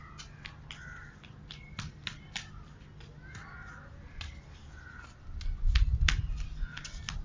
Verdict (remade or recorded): recorded